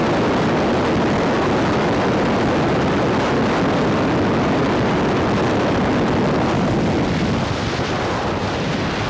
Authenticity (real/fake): real